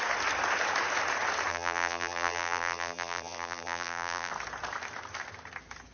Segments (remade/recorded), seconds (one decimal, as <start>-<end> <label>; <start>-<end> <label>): 0.0-1.5 recorded; 1.5-4.3 remade; 4.3-5.9 recorded